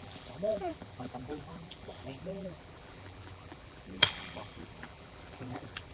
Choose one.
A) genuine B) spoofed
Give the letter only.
B